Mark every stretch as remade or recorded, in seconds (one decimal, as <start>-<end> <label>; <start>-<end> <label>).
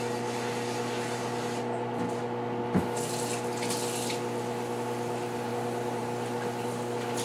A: 0.0-7.2 recorded